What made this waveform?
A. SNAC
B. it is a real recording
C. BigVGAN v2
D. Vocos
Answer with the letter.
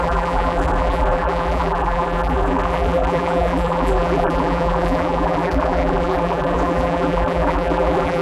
C